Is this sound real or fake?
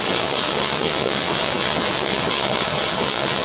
fake